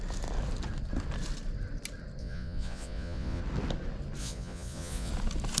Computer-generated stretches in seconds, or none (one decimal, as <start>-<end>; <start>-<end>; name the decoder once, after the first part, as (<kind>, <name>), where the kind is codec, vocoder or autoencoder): 2.2-3.4 (vocoder, Vocos); 4.2-5.1